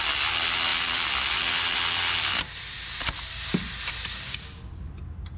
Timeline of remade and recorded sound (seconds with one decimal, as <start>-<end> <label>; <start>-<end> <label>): 0.0-5.4 recorded